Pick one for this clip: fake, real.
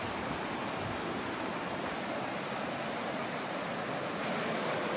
real